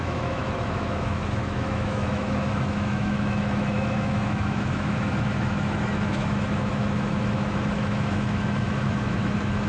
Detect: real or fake fake